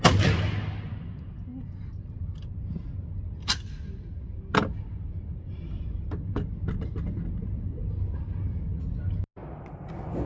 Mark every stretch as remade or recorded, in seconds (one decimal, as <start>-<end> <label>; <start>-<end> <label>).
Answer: 0.0-10.3 recorded